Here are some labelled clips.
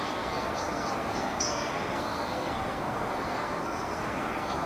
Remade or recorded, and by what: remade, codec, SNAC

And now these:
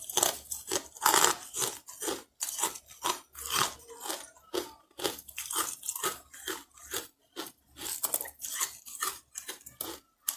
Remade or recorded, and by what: recorded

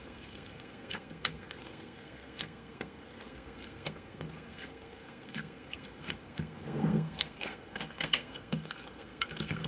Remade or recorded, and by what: remade, codec, SNAC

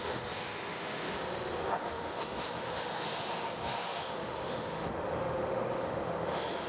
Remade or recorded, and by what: remade, autoencoder, DAC-VAE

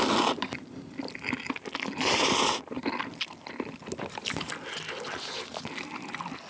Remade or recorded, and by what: recorded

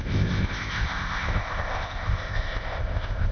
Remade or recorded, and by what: remade, codec, ZipCodec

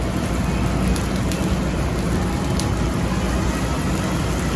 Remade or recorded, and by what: recorded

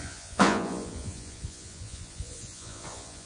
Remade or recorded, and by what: remade, vocoder, Vocos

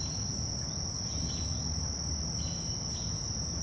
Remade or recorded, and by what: recorded